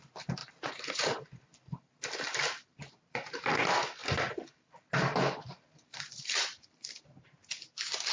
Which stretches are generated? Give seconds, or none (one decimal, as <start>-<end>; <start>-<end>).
0.4-3.4; 4.0-6.6